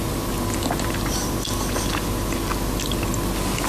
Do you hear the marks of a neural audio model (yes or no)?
no